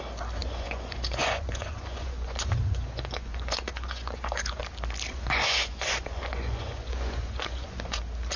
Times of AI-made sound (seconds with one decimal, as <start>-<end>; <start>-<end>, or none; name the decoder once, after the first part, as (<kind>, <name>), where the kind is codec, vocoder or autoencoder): 0.4-4.6 (vocoder, Vocos); 5.1-8.0